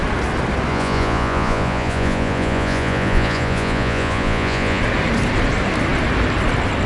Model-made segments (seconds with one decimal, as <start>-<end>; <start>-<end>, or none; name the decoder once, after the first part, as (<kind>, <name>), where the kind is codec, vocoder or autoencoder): 0.7-4.8 (vocoder, Vocos)